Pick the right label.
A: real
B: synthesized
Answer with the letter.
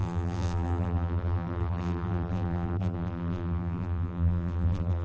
B